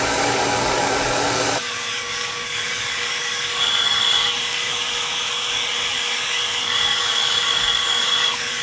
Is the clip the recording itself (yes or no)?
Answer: no